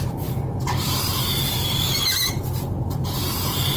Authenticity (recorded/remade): recorded